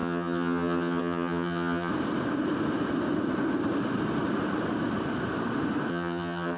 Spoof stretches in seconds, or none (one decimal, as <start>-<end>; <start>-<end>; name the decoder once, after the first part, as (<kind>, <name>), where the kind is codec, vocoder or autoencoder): 0.0-1.9 (vocoder, HiFi-GAN); 5.9-6.6